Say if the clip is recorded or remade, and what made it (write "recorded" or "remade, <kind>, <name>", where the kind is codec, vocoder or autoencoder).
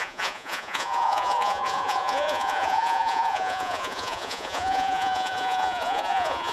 remade, vocoder, Vocos